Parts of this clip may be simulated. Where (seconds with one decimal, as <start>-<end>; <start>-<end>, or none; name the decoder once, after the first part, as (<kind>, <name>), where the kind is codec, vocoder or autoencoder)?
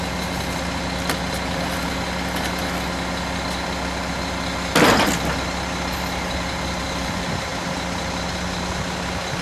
none